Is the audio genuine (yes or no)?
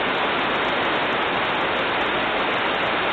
yes